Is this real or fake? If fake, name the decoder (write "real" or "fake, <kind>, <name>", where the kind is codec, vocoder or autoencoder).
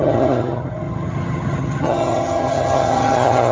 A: fake, vocoder, HiFi-GAN